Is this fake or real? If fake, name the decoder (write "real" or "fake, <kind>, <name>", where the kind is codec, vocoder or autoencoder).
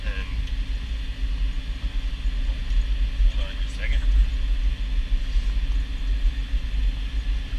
real